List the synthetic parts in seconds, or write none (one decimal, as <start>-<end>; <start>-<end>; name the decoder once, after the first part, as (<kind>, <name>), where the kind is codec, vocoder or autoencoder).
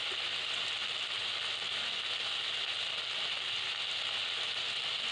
none